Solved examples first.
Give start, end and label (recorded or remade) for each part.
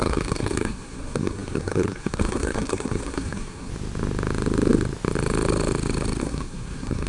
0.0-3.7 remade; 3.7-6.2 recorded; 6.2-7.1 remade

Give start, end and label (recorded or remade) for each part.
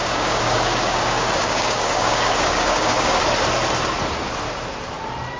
0.0-3.2 remade; 3.2-5.4 recorded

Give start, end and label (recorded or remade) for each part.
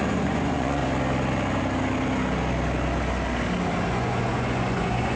0.0-0.8 remade; 0.8-3.9 recorded; 3.9-5.2 remade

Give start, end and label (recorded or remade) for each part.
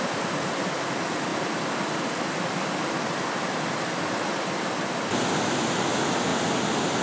0.0-7.0 recorded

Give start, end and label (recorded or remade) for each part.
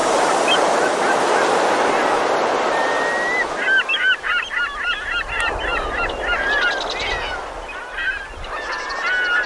0.0-1.0 remade; 1.0-5.7 recorded; 5.7-8.0 remade; 8.0-9.5 recorded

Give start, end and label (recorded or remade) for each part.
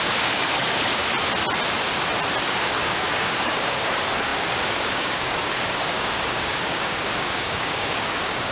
0.0-1.0 remade; 1.0-2.5 recorded; 2.5-8.5 remade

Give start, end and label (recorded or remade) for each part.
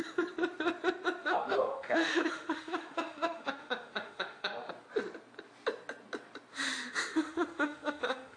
0.0-1.2 recorded; 1.2-4.7 remade; 4.7-6.5 recorded; 6.5-8.4 remade